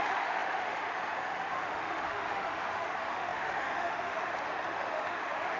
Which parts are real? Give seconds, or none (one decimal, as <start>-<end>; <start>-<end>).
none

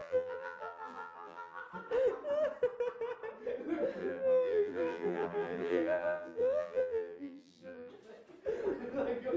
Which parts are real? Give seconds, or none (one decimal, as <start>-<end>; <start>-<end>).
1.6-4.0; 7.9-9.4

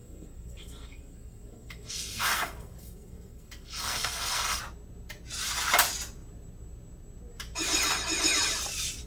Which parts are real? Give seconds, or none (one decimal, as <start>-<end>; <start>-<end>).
4.6-9.1

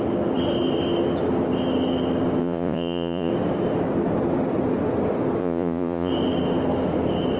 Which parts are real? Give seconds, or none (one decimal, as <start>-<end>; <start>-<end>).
0.0-2.4; 3.3-5.4; 6.1-7.4

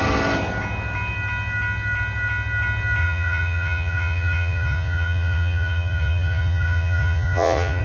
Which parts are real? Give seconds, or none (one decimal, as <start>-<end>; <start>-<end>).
0.0-3.0

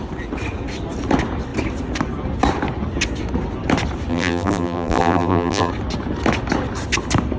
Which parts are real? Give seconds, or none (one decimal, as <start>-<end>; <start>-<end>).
0.0-4.1; 5.7-7.4

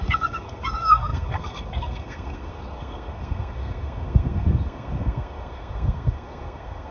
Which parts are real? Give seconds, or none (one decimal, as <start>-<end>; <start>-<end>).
none

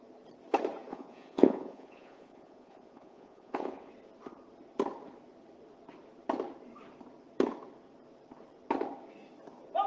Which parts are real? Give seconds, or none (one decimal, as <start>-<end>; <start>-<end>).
0.0-0.9; 3.9-9.9